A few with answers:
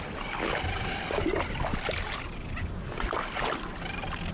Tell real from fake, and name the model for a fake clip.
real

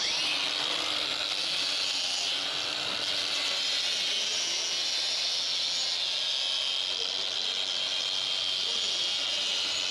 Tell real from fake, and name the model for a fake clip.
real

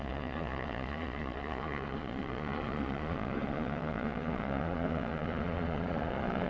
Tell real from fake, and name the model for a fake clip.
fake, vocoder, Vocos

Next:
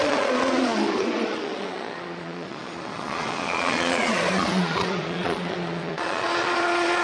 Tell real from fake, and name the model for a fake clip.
fake, vocoder, Vocos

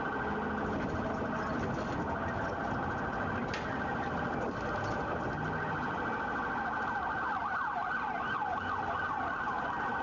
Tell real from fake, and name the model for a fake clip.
real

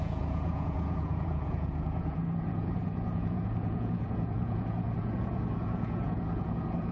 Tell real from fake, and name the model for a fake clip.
fake, vocoder, Vocos